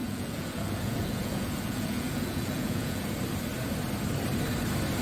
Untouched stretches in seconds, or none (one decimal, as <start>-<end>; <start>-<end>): 3.0-5.0